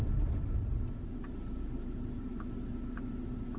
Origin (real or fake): real